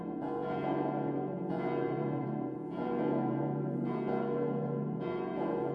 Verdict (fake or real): fake